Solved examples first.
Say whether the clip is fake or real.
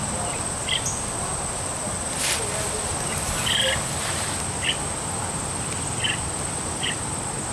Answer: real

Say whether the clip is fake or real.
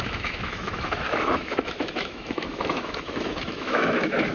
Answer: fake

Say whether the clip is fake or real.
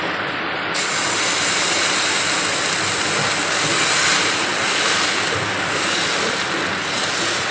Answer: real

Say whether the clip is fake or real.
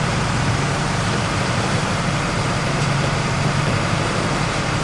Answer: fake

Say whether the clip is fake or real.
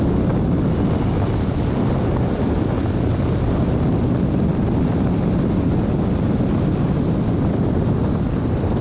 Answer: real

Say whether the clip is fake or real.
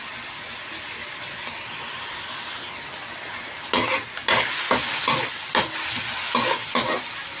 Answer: real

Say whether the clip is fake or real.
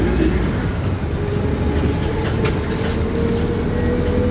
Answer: real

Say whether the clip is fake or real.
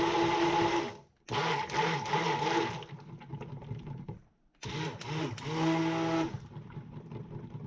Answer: real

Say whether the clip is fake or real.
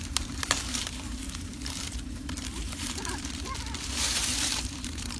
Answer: fake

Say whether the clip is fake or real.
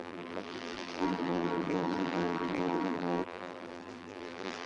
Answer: fake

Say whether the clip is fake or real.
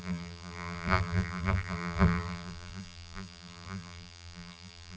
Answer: fake